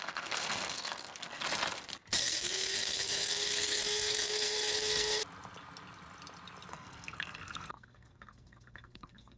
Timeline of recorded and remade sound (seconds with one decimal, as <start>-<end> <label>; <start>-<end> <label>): 0.0-1.4 remade; 1.4-2.2 recorded; 2.2-5.2 remade; 5.2-6.7 recorded; 6.7-9.4 remade